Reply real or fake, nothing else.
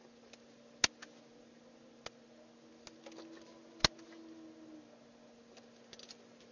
real